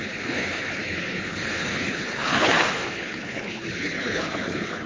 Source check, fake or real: fake